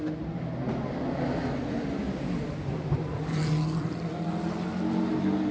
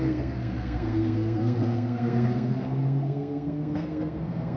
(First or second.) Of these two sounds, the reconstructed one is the second